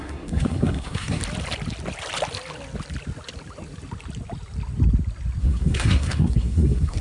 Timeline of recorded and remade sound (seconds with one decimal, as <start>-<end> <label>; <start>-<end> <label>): 0.0-1.2 remade; 1.2-5.4 recorded; 5.4-7.0 remade